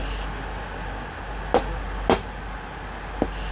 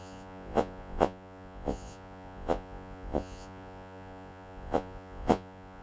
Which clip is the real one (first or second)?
first